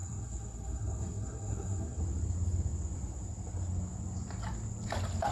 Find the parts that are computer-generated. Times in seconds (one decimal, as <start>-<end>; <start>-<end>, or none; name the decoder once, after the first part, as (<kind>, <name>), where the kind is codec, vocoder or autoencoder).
0.0-2.0 (codec, SNAC)